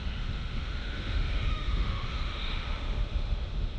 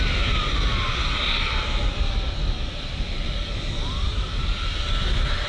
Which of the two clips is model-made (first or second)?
first